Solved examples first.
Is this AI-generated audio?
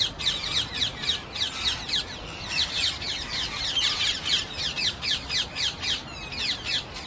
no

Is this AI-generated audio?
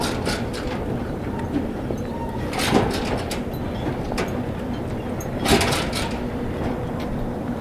yes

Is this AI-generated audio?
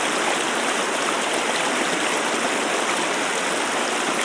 no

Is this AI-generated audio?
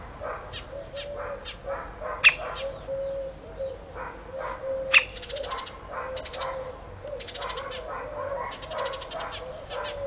no